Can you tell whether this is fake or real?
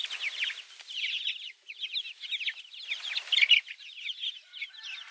real